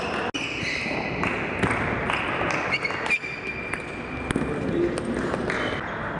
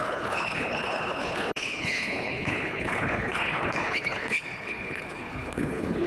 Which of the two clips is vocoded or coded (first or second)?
second